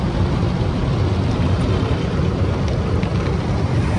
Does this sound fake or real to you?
real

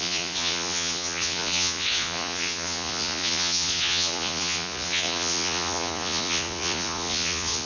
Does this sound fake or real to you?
fake